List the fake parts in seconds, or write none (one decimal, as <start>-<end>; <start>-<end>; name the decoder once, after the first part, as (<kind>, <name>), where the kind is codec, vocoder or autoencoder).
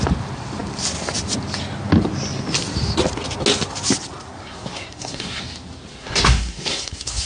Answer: 4.4-5.4 (codec, SNAC); 5.9-7.3